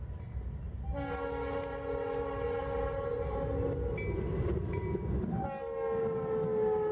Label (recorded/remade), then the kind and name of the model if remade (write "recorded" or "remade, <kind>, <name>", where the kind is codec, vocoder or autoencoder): recorded